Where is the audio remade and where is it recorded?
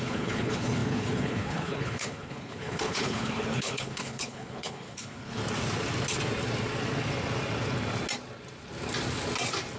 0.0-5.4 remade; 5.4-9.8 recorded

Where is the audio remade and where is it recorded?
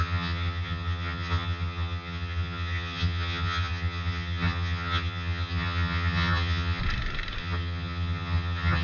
0.0-6.8 remade; 6.8-7.4 recorded; 7.4-8.8 remade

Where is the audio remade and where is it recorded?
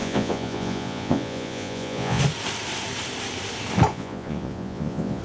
0.0-2.2 remade; 2.2-3.9 recorded; 3.9-5.2 remade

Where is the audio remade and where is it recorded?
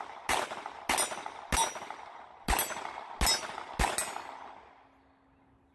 0.0-5.7 recorded